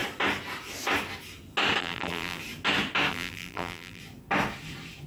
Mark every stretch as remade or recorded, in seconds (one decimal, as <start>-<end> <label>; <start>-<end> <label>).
0.0-1.8 recorded; 1.8-2.4 remade; 2.4-3.1 recorded; 3.1-4.0 remade; 4.0-5.1 recorded